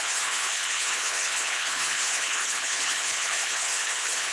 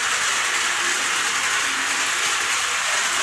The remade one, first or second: first